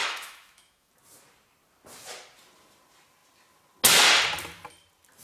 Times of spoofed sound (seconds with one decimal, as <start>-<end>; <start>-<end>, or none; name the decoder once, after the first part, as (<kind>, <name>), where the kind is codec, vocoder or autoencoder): 0.0-0.9 (autoencoder, DAC-VAE)